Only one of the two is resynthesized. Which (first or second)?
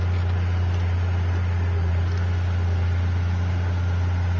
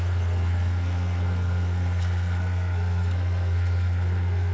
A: second